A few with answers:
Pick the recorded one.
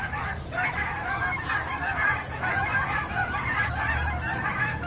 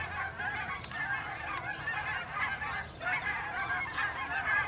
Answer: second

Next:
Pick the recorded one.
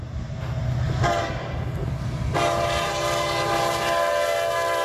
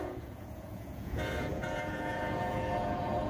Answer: first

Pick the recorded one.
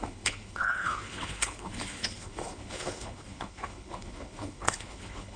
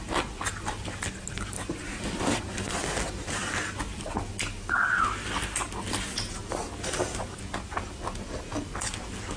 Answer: second